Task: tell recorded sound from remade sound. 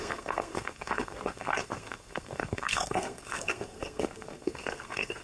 remade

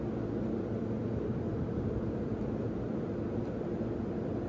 recorded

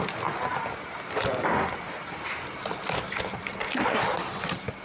recorded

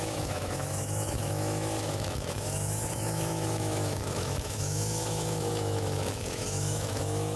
remade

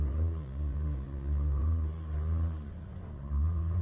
remade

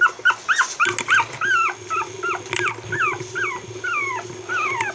recorded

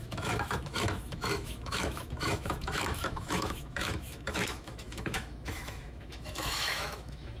remade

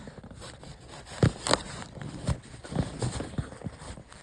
recorded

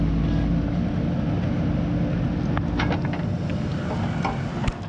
recorded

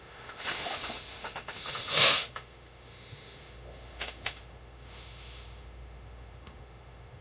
remade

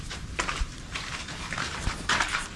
remade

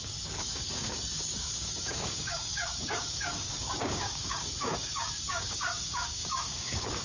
remade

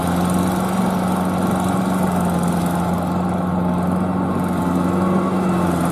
recorded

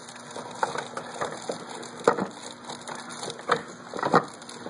recorded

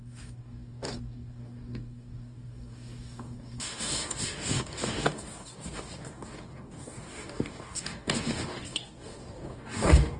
remade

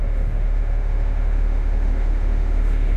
remade